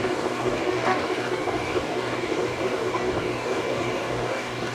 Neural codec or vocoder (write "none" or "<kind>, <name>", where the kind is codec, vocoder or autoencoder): codec, DAC